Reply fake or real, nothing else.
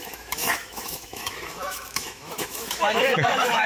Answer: fake